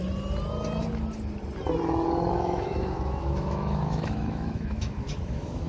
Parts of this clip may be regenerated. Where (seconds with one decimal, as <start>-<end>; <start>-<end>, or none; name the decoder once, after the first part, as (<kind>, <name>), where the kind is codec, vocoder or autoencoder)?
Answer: 2.3-5.7 (autoencoder, DAC-VAE)